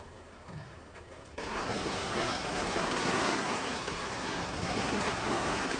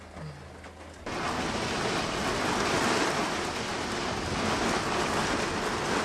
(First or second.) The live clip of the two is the second